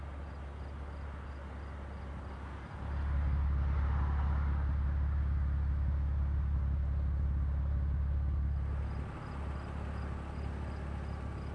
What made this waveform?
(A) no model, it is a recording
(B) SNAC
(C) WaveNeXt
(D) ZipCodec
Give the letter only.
A